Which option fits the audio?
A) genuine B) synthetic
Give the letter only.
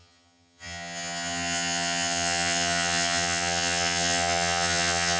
B